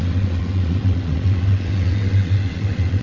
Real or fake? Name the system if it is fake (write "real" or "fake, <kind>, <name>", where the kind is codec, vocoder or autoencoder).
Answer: fake, vocoder, WaveNeXt